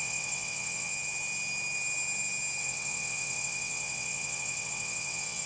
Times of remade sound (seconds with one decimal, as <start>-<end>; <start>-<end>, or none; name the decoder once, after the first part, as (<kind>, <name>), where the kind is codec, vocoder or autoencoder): 0.0-0.9 (vocoder, WaveNeXt); 2.6-5.5